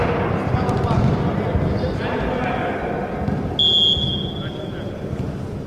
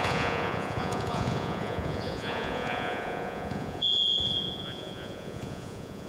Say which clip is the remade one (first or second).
second